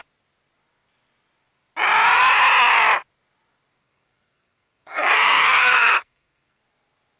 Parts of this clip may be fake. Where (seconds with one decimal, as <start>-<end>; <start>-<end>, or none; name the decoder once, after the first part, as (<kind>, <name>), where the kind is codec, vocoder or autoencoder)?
3.8-6.6 (codec, SNAC)